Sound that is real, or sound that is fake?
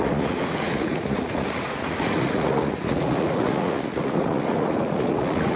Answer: fake